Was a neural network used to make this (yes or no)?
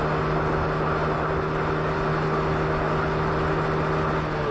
no